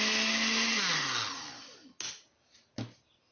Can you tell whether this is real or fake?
real